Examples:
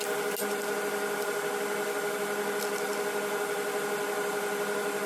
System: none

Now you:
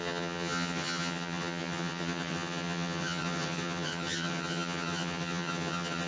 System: vocoder, HiFi-GAN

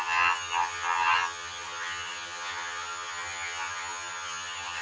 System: vocoder, HiFi-GAN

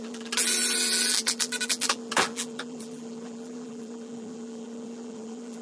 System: vocoder, BigVGAN v2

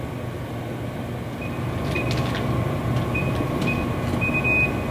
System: none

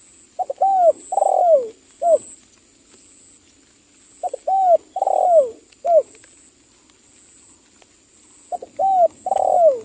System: none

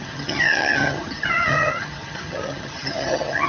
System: vocoder, HiFi-GAN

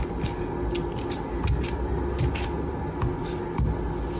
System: none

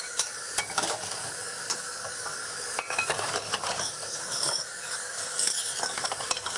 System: codec, DAC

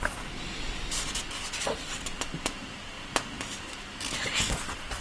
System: none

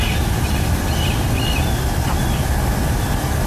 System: none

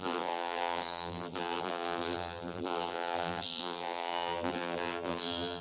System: vocoder, BigVGAN v2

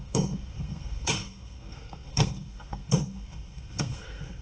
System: codec, SNAC